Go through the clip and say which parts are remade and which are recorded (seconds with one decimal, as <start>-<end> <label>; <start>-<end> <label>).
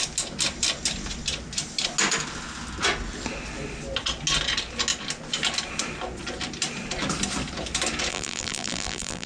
0.0-8.1 recorded; 8.1-9.3 remade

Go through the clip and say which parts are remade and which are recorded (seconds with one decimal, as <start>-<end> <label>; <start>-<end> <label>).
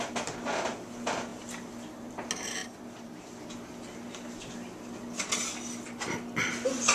0.0-2.6 recorded; 2.6-3.4 remade; 3.4-6.9 recorded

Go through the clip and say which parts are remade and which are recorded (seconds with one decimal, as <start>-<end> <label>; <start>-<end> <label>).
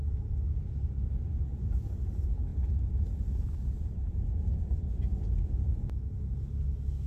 0.0-1.5 recorded; 1.5-2.0 remade; 2.0-2.5 recorded; 2.5-5.8 remade; 5.8-7.1 recorded